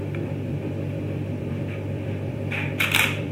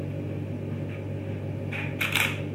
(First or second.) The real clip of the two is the second